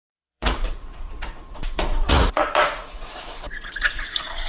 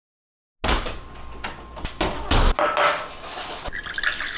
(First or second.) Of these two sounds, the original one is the second